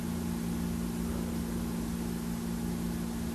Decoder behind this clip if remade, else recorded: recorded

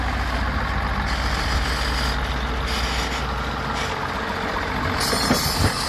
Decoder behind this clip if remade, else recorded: recorded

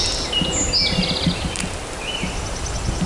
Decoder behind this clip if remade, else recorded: recorded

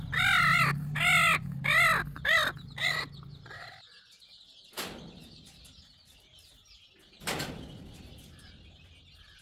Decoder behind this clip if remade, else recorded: recorded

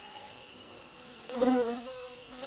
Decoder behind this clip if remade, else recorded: remade, codec, SNAC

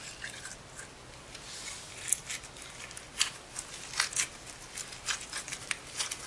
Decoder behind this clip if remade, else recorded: recorded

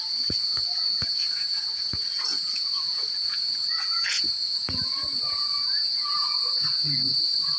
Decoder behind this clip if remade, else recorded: remade, vocoder, Vocos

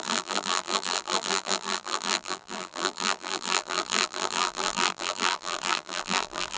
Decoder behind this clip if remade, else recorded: remade, vocoder, BigVGAN v2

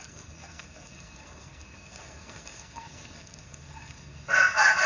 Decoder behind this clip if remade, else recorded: remade, codec, SNAC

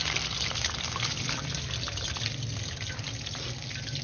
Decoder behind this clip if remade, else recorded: recorded